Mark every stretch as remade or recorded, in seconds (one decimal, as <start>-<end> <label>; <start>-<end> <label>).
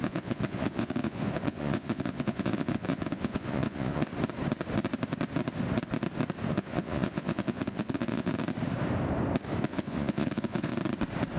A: 0.0-4.1 remade; 4.1-6.5 recorded; 6.5-8.3 remade; 8.3-9.6 recorded; 9.6-10.7 remade; 10.7-11.4 recorded